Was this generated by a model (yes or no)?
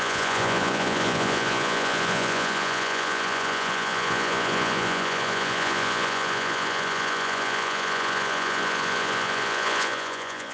yes